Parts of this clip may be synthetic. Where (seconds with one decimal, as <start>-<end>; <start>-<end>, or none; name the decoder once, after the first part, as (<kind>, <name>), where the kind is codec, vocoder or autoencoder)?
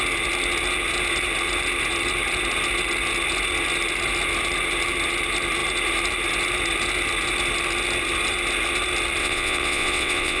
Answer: 9.2-10.4 (vocoder, WaveNeXt)